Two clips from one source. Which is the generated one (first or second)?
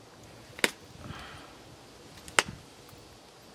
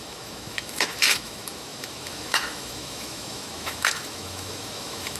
second